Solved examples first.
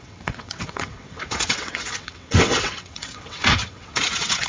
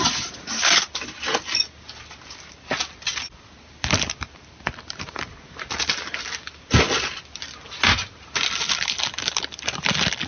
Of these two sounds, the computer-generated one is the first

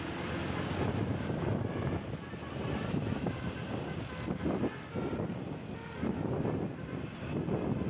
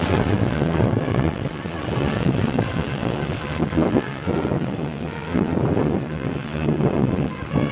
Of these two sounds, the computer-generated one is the second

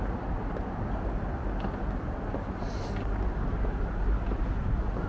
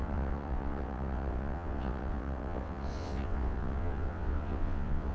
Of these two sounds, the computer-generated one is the second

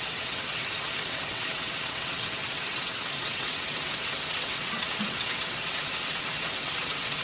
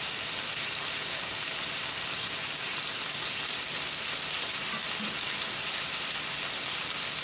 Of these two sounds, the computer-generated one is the first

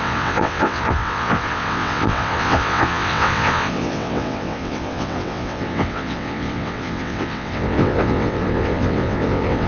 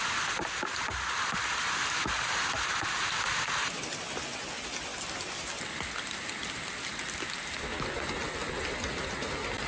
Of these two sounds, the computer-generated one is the first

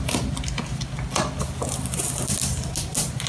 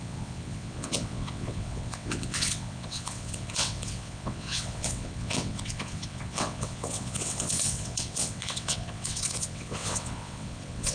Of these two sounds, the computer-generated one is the second